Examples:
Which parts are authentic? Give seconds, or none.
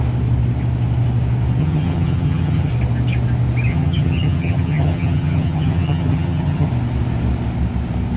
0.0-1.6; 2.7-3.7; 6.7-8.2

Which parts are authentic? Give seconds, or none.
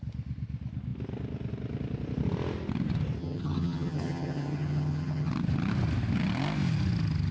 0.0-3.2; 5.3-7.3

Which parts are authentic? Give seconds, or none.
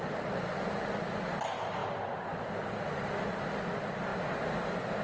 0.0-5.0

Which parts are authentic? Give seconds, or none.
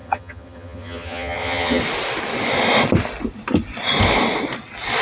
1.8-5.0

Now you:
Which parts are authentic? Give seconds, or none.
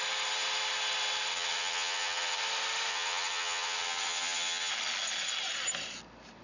0.0-1.3; 2.4-2.9; 4.7-6.4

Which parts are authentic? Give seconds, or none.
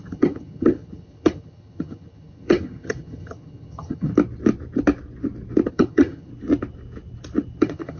4.1-5.7; 6.3-7.6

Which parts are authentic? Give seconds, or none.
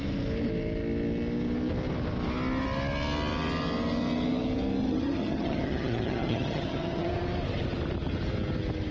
0.0-4.8; 7.1-8.9